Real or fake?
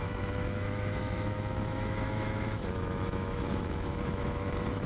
fake